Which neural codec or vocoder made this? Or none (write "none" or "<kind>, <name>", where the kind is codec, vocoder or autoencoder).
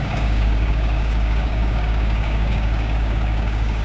codec, DAC